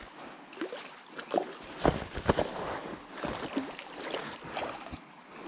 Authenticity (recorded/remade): recorded